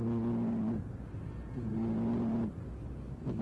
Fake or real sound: real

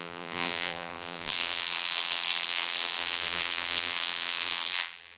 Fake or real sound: fake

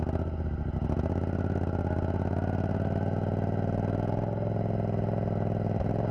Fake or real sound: real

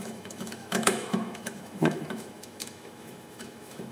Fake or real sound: fake